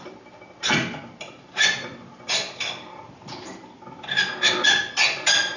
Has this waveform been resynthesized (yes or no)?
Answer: no